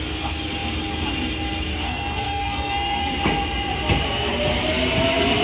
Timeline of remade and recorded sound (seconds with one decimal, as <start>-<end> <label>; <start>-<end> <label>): 0.0-1.7 recorded; 1.7-3.1 remade; 3.1-5.4 recorded